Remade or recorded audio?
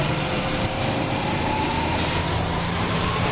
remade